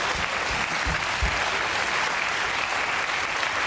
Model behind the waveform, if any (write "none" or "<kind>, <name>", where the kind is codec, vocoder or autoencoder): vocoder, BigVGAN v2